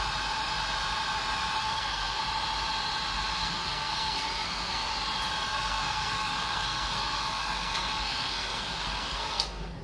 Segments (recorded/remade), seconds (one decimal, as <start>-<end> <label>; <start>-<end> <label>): 0.0-1.6 recorded; 1.6-2.2 remade; 2.2-3.4 recorded; 3.4-4.9 remade; 4.9-5.5 recorded; 5.5-9.8 remade